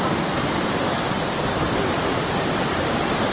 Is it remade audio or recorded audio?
recorded